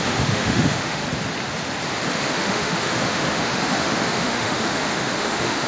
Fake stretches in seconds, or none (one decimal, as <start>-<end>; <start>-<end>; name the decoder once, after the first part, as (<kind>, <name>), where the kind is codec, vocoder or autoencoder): 0.0-1.0 (autoencoder, DAC-VAE); 2.1-5.7